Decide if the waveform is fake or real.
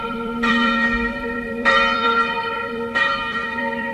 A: fake